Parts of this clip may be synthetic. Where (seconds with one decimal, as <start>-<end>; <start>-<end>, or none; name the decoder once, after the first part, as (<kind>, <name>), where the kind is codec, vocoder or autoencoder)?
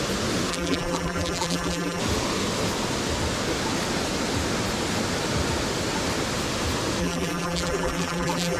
0.5-2.0 (vocoder, BigVGAN v2); 7.0-8.6